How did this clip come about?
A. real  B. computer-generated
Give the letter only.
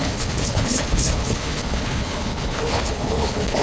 B